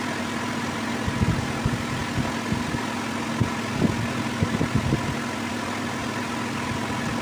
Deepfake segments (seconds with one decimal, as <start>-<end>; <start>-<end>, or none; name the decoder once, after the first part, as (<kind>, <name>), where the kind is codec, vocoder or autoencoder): none